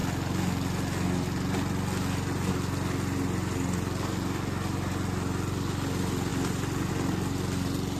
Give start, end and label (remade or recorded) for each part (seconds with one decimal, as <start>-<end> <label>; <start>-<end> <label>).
0.0-8.0 recorded